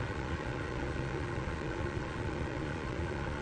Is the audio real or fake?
fake